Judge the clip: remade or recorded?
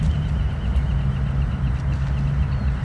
recorded